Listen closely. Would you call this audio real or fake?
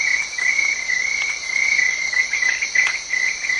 real